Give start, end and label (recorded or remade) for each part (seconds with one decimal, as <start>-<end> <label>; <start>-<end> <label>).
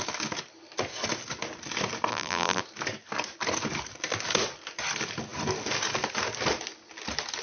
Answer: 0.0-2.1 recorded; 2.1-2.6 remade; 2.6-7.4 recorded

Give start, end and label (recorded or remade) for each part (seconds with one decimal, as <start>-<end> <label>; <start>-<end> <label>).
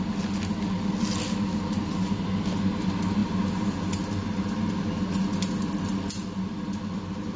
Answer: 0.0-7.4 recorded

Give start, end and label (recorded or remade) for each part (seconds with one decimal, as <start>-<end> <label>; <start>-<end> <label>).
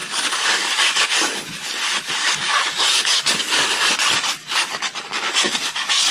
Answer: 0.0-1.5 remade; 1.5-2.2 recorded; 2.2-6.1 remade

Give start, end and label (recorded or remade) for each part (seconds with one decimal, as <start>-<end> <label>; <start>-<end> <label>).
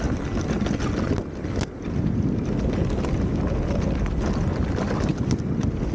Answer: 0.0-5.9 recorded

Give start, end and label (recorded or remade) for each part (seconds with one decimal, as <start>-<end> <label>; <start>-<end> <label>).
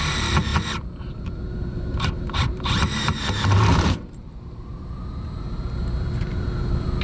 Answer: 0.0-0.5 remade; 0.5-1.1 recorded; 1.1-4.7 remade; 4.7-5.4 recorded; 5.4-7.0 remade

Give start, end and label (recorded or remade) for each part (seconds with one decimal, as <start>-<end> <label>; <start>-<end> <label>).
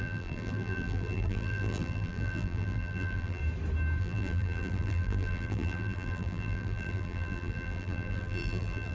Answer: 0.0-3.4 remade; 3.4-4.0 recorded; 4.0-8.9 remade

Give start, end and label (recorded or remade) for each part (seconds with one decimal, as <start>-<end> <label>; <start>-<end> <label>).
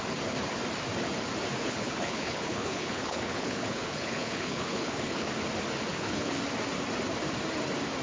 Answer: 0.0-1.6 recorded; 1.6-5.3 remade; 5.3-5.9 recorded; 5.9-6.4 remade; 6.4-8.0 recorded